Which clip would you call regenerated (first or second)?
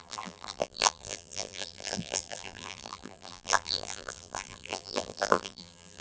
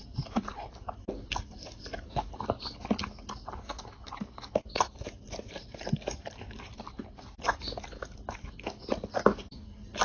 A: first